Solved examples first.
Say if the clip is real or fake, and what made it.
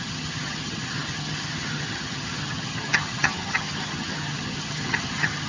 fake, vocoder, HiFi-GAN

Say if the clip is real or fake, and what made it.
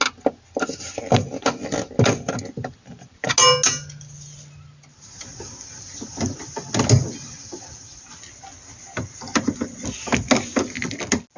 real